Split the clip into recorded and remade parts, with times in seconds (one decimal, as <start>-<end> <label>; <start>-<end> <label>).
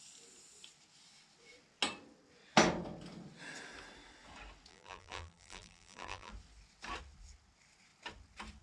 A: 0.0-4.7 recorded; 4.7-6.3 remade; 6.3-8.6 recorded